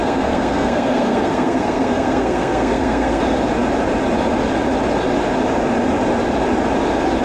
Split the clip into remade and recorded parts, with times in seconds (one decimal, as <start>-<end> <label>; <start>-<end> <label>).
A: 0.0-3.2 remade; 3.2-7.2 recorded